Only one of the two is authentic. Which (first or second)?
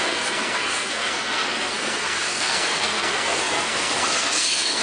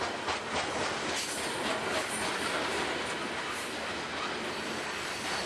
second